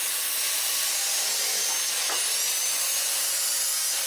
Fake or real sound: real